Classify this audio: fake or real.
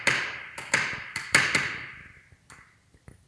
fake